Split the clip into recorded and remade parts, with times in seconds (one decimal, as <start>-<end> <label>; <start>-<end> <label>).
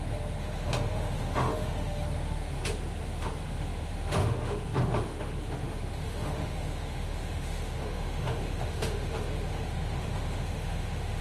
0.0-11.2 remade